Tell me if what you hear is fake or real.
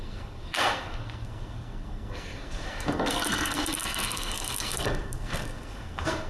fake